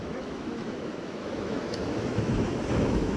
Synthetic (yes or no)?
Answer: yes